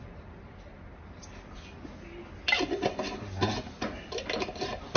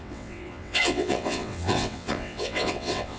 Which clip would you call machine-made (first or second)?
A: second